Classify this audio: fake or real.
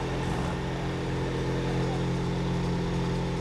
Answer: real